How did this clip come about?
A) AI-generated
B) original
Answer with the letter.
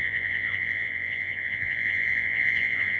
A